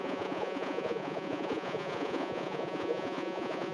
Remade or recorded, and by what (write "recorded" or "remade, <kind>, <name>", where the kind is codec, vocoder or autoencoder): remade, vocoder, Vocos